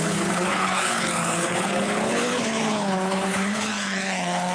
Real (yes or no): no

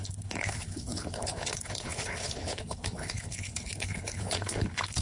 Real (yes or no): no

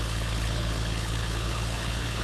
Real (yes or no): no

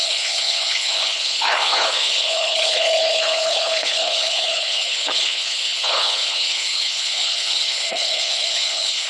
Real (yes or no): no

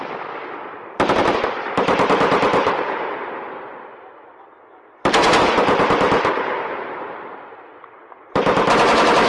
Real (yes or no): yes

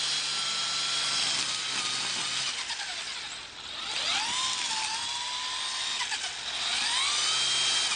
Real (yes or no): yes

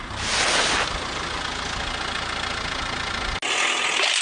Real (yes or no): yes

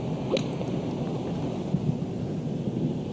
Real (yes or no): yes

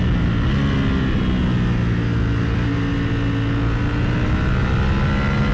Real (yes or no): yes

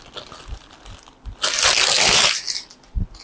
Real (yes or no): yes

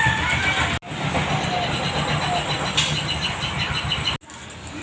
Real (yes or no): yes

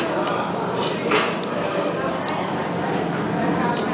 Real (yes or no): yes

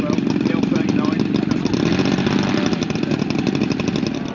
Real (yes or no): yes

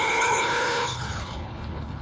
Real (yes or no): no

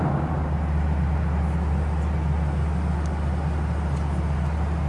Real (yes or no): yes